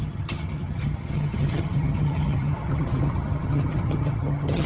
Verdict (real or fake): fake